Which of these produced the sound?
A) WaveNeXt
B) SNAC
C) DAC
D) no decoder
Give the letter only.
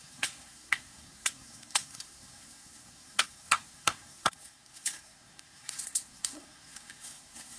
B